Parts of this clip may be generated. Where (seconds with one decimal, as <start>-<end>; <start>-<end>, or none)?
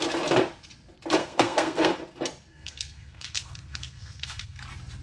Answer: 1.2-1.9; 2.5-4.6